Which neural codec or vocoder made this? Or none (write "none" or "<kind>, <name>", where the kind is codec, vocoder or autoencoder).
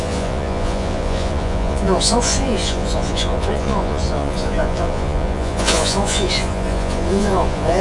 vocoder, Vocos